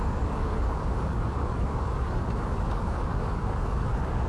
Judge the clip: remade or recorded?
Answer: remade